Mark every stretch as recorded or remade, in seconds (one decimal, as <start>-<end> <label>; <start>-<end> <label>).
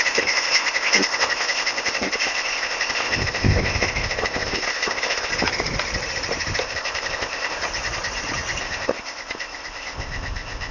0.0-5.3 remade; 5.3-6.6 recorded; 6.6-7.6 remade; 7.6-8.6 recorded; 8.6-10.7 remade